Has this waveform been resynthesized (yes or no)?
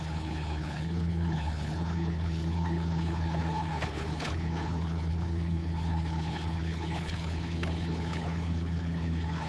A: yes